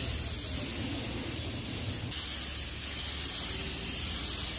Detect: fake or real real